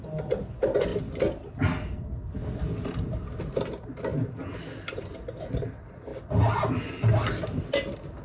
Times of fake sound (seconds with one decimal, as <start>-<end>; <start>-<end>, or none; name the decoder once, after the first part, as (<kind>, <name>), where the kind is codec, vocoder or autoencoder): none